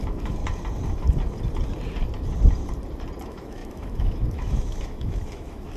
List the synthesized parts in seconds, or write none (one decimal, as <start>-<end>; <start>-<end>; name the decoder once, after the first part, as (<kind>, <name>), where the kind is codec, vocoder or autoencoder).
0.0-0.4 (autoencoder, DAC-VAE); 3.2-5.8